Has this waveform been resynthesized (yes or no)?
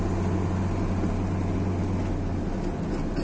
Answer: no